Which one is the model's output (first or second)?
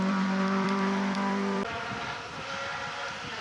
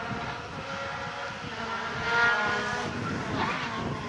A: first